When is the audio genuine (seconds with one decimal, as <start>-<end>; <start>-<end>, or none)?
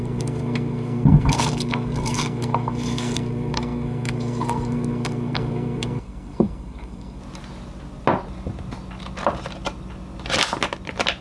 7.2-11.2